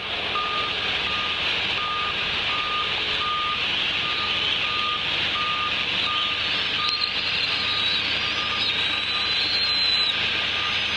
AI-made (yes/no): no